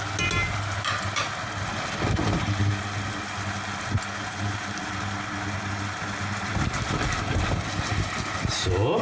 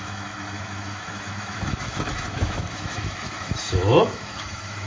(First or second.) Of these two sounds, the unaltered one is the first